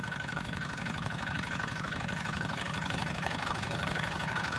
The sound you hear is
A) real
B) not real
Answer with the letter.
B